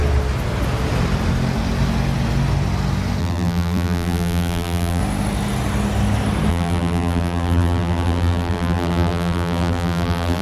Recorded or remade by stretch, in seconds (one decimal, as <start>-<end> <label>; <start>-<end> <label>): 0.0-3.2 recorded; 3.2-5.0 remade; 5.0-6.5 recorded; 6.5-10.4 remade